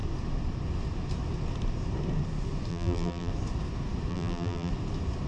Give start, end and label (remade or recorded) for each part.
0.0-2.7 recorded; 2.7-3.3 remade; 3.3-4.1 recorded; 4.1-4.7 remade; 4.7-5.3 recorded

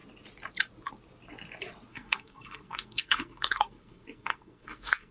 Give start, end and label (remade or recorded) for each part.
0.0-1.9 recorded; 1.9-5.1 remade

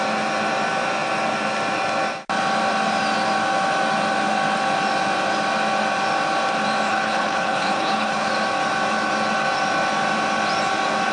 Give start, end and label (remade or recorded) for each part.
0.0-6.9 recorded; 6.9-8.3 remade; 8.3-11.1 recorded

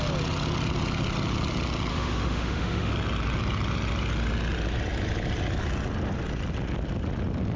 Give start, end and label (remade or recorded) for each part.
0.0-1.9 recorded; 1.9-2.9 remade; 2.9-7.6 recorded